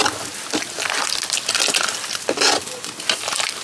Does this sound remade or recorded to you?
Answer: recorded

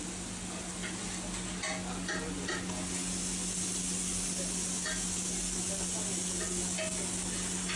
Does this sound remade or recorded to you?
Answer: recorded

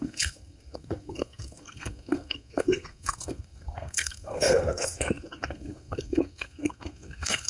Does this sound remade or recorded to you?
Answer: remade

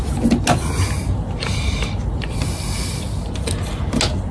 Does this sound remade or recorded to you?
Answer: recorded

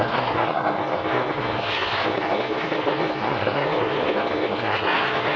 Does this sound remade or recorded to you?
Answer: remade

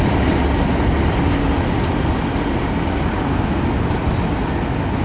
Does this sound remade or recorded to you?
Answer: recorded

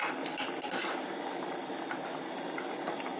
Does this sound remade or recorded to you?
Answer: recorded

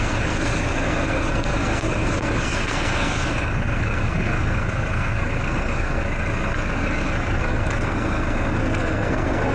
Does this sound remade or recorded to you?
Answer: remade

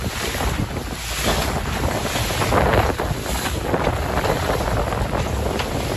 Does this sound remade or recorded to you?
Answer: recorded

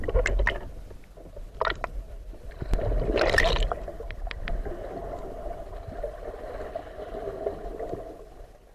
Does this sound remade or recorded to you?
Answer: recorded